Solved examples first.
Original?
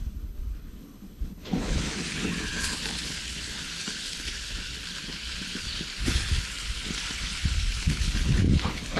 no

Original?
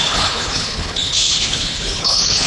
no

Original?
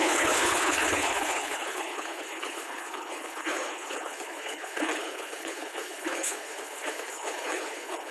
no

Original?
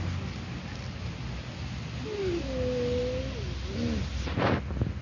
yes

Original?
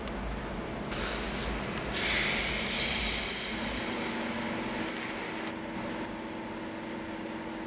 yes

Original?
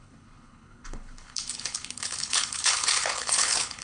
no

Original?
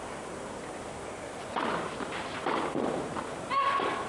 yes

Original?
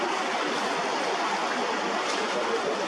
yes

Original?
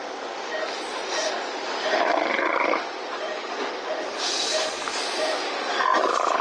yes